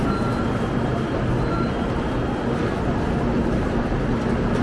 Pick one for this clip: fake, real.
real